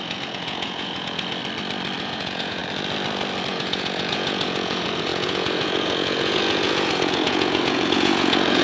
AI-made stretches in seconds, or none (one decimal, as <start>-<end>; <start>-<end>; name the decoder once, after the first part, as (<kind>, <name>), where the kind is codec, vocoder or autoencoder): 0.0-1.4 (vocoder, Vocos); 2.0-2.6; 3.5-8.6